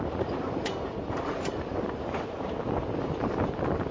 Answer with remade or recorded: recorded